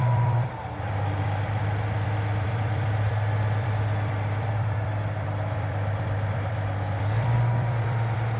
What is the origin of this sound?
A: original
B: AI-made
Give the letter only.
B